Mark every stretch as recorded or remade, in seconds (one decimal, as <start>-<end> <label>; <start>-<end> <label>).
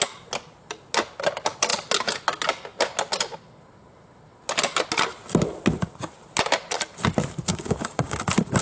0.0-7.5 recorded; 7.5-8.2 remade; 8.2-8.6 recorded